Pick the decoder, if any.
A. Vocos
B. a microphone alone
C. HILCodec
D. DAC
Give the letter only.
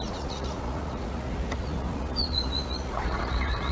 A